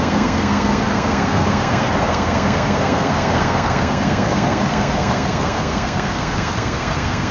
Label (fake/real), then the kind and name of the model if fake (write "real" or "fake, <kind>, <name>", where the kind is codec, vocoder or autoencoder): fake, codec, SNAC